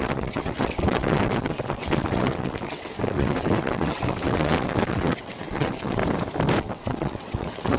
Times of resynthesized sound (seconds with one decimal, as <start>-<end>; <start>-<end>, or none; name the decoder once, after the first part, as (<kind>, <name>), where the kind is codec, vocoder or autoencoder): 0.0-6.0 (vocoder, WaveNeXt); 6.6-7.8